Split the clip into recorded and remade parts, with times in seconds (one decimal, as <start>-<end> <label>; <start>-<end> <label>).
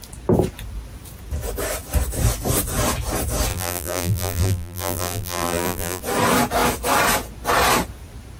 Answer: 0.0-3.5 recorded; 3.5-6.0 remade; 6.0-8.4 recorded